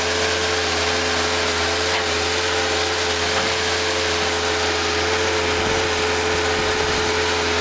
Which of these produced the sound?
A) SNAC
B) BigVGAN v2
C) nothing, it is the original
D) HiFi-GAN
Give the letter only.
C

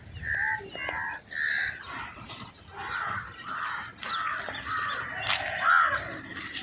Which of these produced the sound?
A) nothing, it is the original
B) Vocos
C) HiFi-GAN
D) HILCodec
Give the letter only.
A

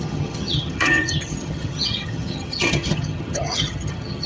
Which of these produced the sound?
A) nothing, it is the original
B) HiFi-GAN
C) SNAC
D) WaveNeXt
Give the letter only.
B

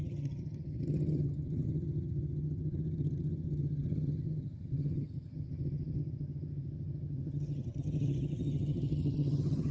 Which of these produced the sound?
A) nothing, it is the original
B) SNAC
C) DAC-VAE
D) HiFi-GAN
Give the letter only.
D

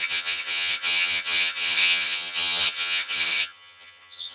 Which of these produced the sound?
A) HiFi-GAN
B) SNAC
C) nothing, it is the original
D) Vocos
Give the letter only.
A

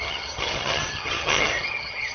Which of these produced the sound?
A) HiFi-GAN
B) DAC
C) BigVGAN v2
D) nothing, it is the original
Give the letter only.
A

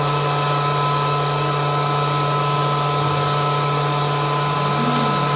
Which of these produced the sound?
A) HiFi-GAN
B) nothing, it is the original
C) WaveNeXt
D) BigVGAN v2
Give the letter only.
B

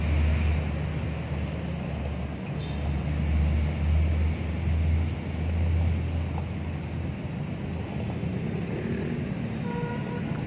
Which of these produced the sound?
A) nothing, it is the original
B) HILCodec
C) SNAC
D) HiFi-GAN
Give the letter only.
A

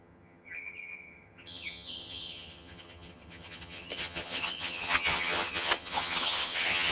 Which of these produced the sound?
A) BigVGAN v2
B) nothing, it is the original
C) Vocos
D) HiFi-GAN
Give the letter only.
D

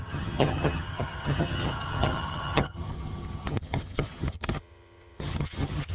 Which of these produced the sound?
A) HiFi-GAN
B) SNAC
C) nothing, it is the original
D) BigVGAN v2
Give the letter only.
A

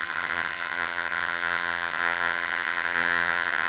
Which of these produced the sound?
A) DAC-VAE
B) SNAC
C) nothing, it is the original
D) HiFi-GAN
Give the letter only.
D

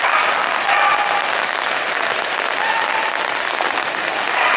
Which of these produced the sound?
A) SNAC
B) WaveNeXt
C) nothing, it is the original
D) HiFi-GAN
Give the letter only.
C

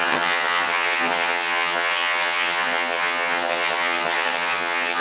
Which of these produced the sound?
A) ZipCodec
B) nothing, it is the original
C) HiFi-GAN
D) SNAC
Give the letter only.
C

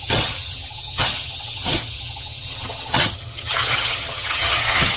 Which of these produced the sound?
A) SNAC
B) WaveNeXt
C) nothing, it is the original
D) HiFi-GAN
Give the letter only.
D